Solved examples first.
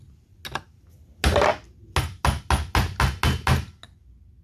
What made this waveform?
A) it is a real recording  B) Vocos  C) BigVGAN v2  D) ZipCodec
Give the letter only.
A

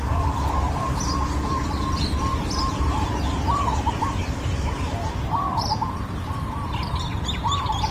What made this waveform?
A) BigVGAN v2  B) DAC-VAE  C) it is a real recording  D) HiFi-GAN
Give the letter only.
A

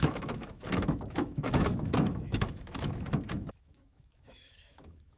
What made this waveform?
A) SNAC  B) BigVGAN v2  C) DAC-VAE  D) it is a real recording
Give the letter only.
C